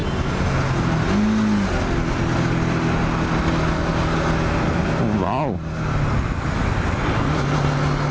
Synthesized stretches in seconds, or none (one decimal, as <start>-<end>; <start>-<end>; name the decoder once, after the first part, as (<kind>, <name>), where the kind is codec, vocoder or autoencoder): none